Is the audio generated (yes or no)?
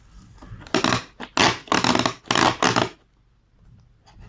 no